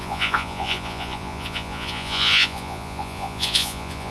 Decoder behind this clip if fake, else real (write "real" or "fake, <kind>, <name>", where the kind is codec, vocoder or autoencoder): fake, vocoder, Vocos